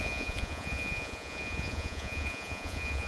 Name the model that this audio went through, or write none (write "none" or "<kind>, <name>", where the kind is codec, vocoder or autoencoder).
vocoder, Vocos